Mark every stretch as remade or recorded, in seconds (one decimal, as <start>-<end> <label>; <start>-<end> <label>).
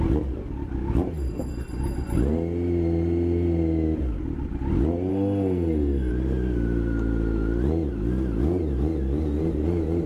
0.0-5.1 recorded; 5.1-6.1 remade; 6.1-10.1 recorded